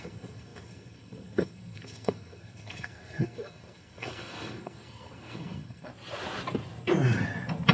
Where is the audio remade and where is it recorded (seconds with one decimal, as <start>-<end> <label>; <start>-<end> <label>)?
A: 0.0-5.9 remade; 5.9-7.7 recorded